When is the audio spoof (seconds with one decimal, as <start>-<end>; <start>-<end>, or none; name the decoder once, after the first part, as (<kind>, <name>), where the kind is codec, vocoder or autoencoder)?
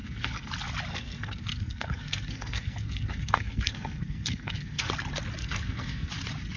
0.0-0.5 (codec, SNAC); 0.9-4.9; 5.4-6.1